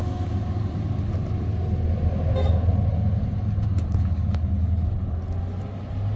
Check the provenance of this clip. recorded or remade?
recorded